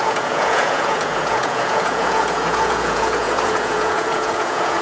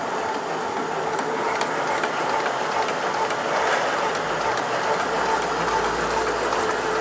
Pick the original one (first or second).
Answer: second